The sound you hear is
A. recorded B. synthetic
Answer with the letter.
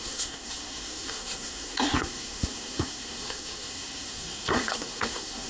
B